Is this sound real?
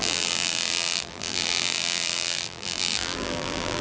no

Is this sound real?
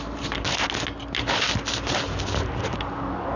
yes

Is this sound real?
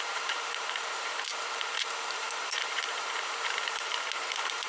no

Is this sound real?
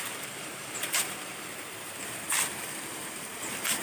no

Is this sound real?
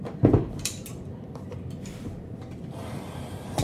no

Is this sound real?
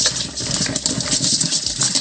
yes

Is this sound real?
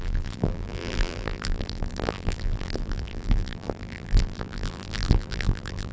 no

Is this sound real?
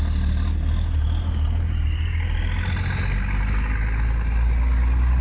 yes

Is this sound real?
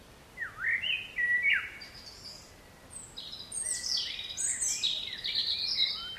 yes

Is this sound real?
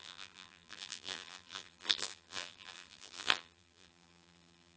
no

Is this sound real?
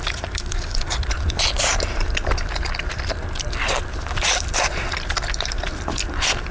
no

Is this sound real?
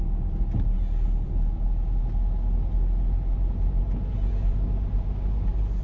yes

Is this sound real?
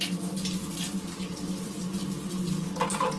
no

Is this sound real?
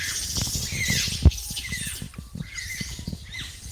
no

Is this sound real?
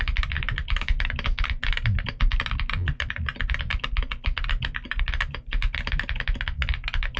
yes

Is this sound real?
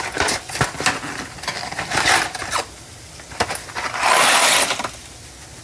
yes